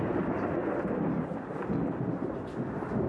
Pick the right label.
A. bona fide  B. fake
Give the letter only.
A